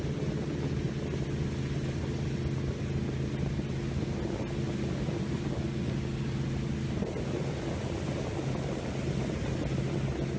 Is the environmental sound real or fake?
real